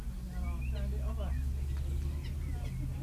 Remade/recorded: recorded